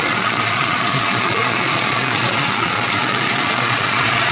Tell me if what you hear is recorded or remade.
remade